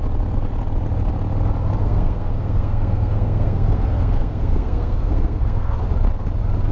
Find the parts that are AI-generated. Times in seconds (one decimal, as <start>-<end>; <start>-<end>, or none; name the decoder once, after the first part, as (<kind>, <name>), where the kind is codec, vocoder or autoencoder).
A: 1.8-5.7 (codec, SNAC)